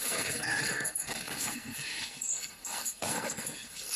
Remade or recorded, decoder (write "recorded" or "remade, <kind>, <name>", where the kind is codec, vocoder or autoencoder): remade, codec, SNAC